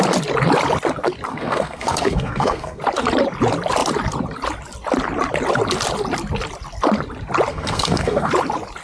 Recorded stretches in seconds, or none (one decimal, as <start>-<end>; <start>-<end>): 0.0-1.3; 2.8-7.5; 8.3-8.8